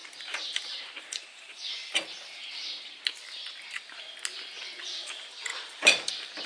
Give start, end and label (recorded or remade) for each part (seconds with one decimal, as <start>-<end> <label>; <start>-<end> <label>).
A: 0.0-1.7 remade; 1.7-4.8 recorded; 4.8-6.5 remade